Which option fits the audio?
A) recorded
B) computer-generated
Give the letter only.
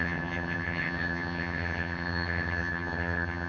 B